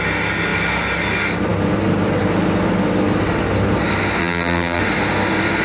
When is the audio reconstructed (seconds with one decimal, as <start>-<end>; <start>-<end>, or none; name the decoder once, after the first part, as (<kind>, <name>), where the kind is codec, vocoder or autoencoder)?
4.2-4.8 (vocoder, BigVGAN v2)